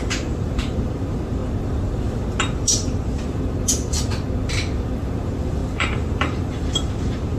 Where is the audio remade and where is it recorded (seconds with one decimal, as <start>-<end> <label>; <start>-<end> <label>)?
0.0-1.4 remade; 1.4-2.4 recorded; 2.4-4.1 remade; 4.1-5.0 recorded; 5.0-7.4 remade